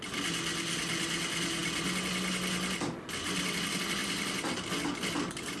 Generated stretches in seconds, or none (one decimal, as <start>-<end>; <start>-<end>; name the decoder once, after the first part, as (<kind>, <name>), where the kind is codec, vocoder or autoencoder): none